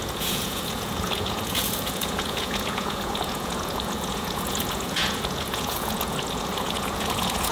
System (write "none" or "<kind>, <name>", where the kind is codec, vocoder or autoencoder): vocoder, Vocos